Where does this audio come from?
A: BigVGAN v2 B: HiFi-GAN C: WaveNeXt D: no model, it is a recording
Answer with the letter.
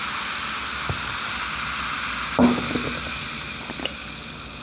D